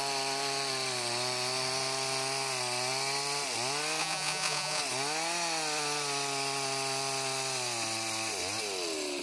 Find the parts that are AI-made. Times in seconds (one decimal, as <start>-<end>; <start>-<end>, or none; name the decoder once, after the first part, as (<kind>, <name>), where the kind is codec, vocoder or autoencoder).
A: 4.0-4.8 (vocoder, Vocos)